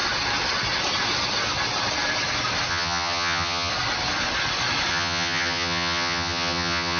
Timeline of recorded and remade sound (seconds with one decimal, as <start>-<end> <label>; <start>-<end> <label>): 0.0-2.7 recorded; 2.7-3.7 remade; 3.7-4.9 recorded; 4.9-7.0 remade